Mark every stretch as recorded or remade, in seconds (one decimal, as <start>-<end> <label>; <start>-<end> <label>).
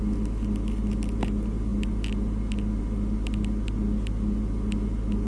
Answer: 0.0-5.3 recorded